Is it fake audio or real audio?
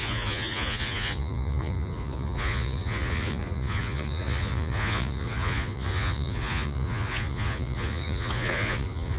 fake